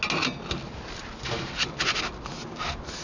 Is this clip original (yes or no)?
yes